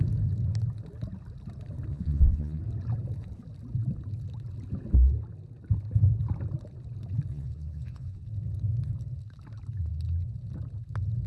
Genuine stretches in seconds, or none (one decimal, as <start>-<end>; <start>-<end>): 0.0-1.9; 2.6-7.3; 8.2-11.3